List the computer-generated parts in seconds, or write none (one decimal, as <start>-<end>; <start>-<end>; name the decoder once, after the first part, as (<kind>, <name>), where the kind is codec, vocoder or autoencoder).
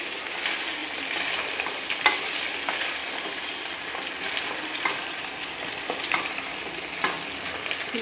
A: 3.0-6.9 (vocoder, BigVGAN v2)